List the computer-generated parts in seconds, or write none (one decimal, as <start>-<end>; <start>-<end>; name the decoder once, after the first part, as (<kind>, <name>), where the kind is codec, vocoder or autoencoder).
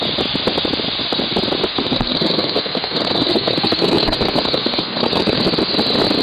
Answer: 1.7-5.4 (codec, SNAC)